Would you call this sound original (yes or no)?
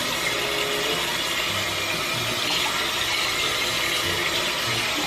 yes